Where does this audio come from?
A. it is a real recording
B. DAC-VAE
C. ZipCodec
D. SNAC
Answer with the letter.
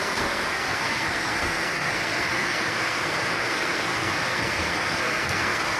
D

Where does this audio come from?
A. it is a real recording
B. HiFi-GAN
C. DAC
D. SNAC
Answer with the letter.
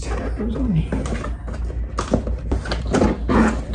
A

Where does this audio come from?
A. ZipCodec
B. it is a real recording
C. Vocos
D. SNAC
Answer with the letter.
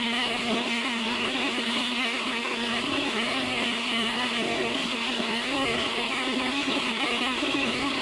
D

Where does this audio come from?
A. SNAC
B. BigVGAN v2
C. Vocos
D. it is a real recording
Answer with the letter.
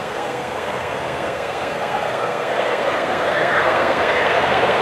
A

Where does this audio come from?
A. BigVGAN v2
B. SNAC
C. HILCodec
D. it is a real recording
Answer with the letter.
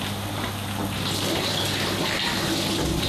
D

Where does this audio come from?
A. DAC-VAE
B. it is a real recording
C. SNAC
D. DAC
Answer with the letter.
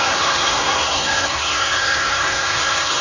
C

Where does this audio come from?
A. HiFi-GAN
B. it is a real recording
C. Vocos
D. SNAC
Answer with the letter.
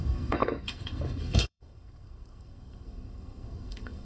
D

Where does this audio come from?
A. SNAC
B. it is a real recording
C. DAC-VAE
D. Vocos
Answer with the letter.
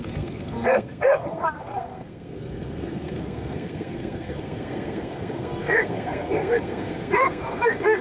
A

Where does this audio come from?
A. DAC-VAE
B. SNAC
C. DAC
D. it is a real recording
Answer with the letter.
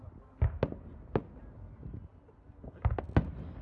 D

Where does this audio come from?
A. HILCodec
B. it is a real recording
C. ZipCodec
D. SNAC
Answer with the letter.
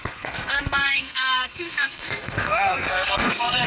D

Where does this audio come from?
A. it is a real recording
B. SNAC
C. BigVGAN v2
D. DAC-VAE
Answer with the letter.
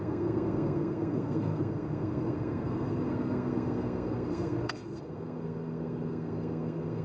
B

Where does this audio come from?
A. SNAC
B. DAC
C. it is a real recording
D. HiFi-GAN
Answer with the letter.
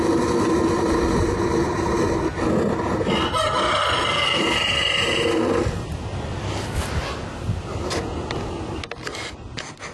C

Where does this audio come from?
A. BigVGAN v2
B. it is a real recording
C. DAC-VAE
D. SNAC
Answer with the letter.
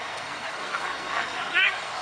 D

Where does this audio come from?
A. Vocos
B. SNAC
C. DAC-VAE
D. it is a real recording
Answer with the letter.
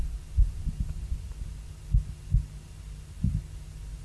D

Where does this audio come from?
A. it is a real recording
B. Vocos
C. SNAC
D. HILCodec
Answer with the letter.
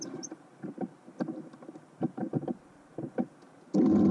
A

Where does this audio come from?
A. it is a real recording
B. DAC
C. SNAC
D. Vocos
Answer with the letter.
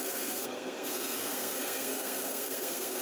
C